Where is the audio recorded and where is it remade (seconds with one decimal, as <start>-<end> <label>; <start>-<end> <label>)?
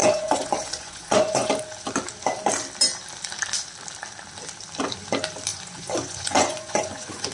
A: 0.0-1.5 remade; 1.5-5.5 recorded; 5.5-7.3 remade